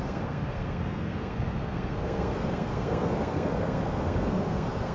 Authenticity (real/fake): fake